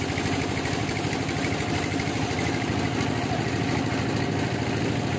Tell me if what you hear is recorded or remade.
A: recorded